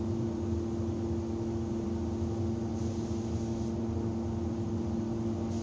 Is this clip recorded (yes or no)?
yes